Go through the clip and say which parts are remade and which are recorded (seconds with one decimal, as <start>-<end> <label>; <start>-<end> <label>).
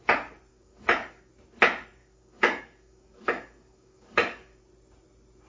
0.0-0.5 recorded; 0.5-1.3 remade; 1.3-2.0 recorded; 2.0-4.6 remade; 4.6-5.5 recorded